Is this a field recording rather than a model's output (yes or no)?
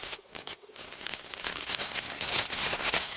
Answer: no